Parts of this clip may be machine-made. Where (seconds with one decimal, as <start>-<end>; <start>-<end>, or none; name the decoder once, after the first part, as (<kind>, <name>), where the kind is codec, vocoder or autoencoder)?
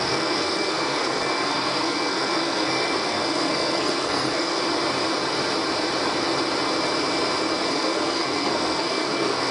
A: 0.0-4.6 (codec, SNAC); 7.7-9.5